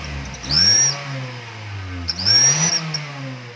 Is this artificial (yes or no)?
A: no